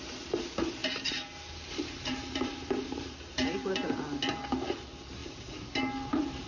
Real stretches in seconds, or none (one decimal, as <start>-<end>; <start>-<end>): 0.0-0.8; 3.7-5.2